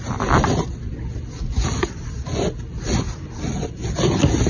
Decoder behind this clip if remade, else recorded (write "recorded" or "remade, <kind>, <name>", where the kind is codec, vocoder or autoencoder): recorded